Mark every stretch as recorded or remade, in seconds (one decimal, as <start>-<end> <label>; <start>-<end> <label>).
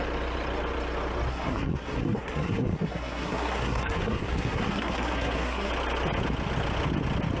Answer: 0.0-1.3 recorded; 1.3-5.7 remade; 5.7-7.4 recorded